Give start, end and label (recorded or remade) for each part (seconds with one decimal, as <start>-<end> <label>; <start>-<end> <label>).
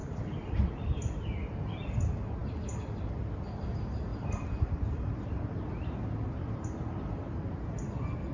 0.0-0.7 remade; 0.7-4.1 recorded; 4.1-6.5 remade; 6.5-8.3 recorded